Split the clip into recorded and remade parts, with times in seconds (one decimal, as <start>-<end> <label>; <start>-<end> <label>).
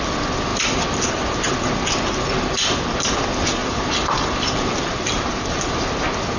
0.0-0.5 recorded; 0.5-1.1 remade; 1.1-3.6 recorded; 3.6-5.6 remade; 5.6-6.4 recorded